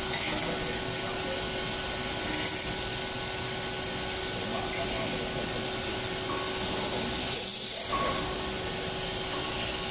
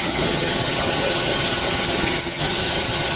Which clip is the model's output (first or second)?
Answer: second